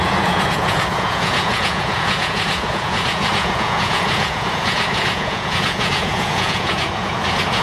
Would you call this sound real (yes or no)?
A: no